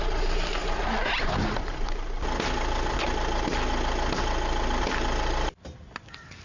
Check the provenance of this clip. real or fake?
real